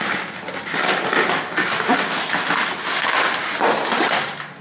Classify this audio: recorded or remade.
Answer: recorded